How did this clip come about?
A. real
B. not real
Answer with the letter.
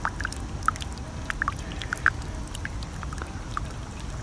A